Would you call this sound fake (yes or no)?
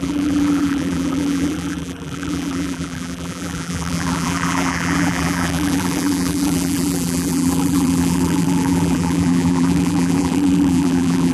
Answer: yes